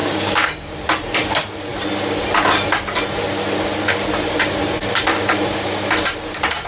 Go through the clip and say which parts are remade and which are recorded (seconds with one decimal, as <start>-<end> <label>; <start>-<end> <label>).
0.0-0.7 remade; 0.7-6.7 recorded

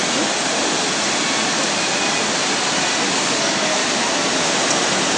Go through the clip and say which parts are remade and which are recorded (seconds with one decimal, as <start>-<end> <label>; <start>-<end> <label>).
0.0-3.1 recorded; 3.1-3.8 remade; 3.8-5.2 recorded

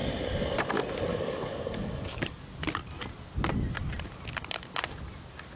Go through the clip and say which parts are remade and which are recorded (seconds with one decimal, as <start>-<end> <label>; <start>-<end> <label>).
0.0-1.1 recorded; 1.1-2.4 remade; 2.4-5.6 recorded